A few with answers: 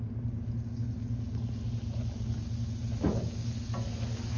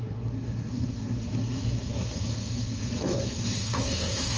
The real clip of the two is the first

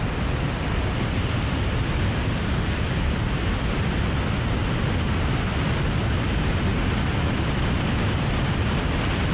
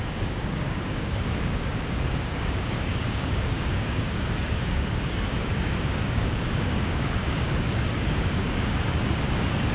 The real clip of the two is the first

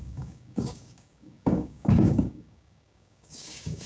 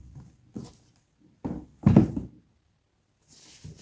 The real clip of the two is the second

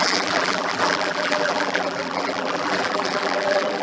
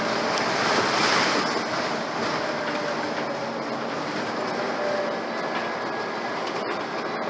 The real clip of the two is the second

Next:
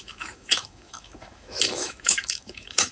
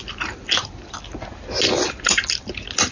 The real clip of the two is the second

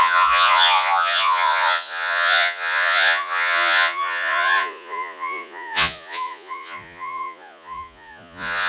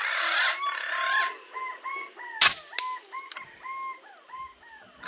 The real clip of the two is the second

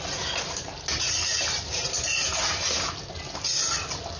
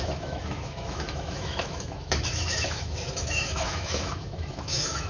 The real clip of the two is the first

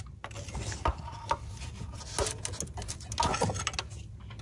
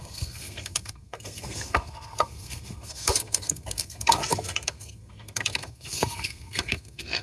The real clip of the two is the first